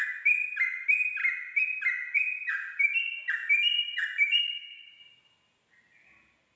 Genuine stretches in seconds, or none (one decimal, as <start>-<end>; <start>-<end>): 0.0-4.4; 5.0-6.6